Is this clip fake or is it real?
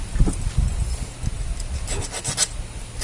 real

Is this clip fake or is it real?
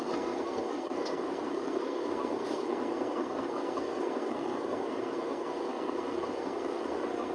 fake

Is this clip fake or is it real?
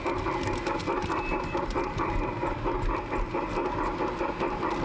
real